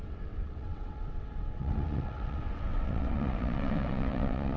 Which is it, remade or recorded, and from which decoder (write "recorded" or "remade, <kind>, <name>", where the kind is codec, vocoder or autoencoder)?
remade, vocoder, WaveNeXt